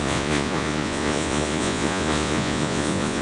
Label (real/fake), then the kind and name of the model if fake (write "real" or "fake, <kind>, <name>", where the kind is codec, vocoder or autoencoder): fake, vocoder, Vocos